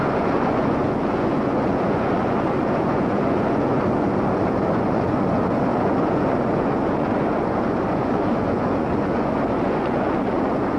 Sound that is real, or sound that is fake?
fake